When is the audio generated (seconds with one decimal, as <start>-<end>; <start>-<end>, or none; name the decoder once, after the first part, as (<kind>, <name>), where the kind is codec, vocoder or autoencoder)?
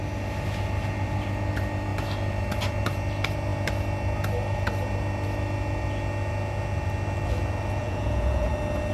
7.8-8.5 (vocoder, Vocos)